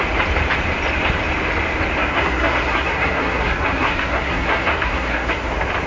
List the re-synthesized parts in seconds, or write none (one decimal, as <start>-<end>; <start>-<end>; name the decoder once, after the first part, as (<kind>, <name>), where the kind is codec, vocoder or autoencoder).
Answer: 2.0-5.5 (codec, SNAC)

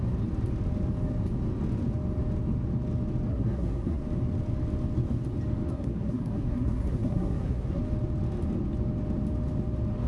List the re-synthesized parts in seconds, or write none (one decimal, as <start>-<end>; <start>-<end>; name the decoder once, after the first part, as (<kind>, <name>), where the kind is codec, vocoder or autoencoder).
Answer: 3.3-4.0 (codec, SNAC); 5.7-7.8

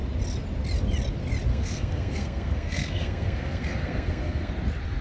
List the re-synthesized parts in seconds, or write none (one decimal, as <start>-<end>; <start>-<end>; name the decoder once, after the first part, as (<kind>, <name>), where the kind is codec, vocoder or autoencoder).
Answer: 1.5-4.5 (codec, SNAC)

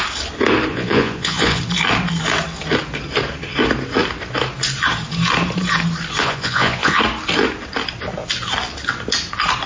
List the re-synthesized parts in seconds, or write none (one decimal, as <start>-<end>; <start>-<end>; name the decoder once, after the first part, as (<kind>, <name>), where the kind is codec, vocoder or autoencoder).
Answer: 0.7-1.6 (vocoder, Vocos); 6.2-7.0

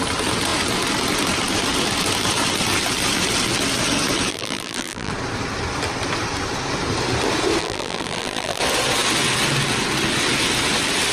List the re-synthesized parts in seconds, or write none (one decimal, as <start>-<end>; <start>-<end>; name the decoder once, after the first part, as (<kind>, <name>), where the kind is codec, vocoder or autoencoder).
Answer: 4.3-5.1 (vocoder, BigVGAN v2); 7.6-8.6

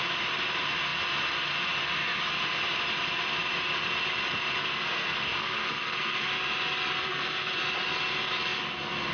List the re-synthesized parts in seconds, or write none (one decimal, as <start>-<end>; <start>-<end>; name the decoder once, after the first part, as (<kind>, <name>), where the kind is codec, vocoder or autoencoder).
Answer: 4.6-6.3 (codec, SNAC); 7.0-7.6

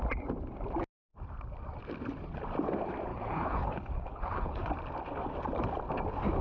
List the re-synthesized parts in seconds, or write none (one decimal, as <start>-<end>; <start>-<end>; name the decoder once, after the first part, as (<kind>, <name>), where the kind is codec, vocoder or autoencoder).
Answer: 3.1-4.7 (codec, HILCodec)